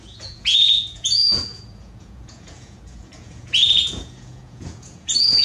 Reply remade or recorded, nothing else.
remade